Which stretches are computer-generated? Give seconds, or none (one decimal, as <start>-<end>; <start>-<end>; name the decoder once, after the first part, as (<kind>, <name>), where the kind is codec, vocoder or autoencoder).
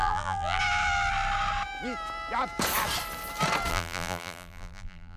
0.0-0.6 (vocoder, BigVGAN v2); 3.7-5.2